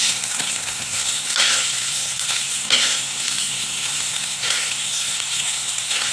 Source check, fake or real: fake